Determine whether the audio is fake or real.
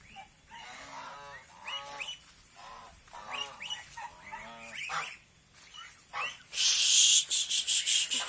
real